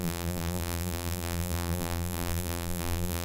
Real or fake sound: fake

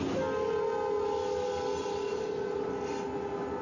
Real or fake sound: real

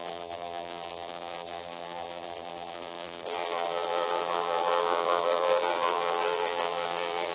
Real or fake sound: fake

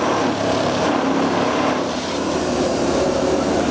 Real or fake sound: fake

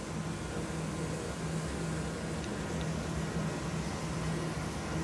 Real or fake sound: real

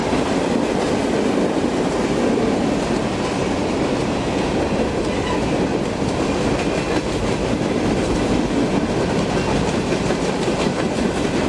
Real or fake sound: real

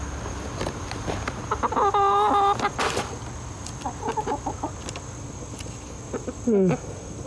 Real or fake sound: real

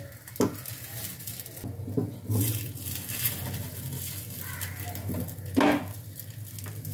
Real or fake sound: real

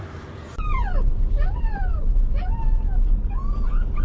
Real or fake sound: real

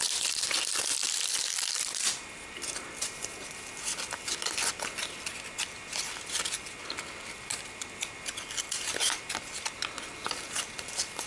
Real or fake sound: fake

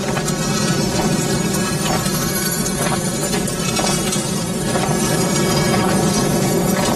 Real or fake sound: real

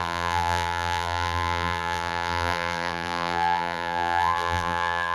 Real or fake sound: fake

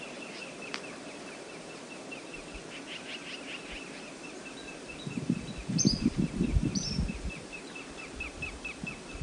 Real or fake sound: fake